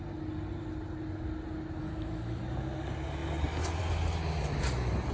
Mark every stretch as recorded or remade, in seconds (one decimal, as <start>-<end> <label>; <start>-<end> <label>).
0.0-1.8 recorded; 1.8-2.4 remade; 2.4-5.1 recorded